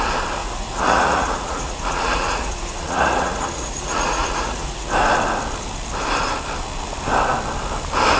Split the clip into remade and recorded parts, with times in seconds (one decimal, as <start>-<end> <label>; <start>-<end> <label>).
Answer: 0.0-0.4 recorded; 0.4-4.9 remade; 4.9-8.2 recorded